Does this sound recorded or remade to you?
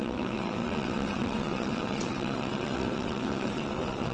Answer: remade